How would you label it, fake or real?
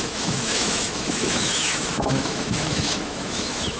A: fake